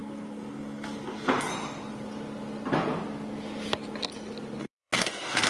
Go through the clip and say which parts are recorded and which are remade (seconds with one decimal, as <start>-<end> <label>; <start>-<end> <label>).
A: 0.0-1.5 remade; 1.5-4.6 recorded; 4.6-5.5 remade